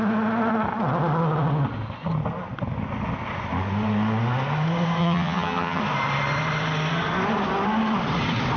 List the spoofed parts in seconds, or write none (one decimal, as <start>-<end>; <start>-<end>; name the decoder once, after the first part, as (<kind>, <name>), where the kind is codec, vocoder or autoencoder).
5.0-5.8 (vocoder, HiFi-GAN)